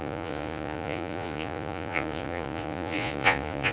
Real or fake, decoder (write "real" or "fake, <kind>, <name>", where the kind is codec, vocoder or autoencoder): fake, vocoder, Vocos